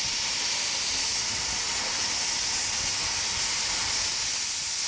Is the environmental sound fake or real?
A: real